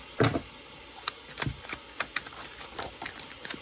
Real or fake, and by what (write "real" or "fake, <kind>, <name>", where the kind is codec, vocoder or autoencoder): real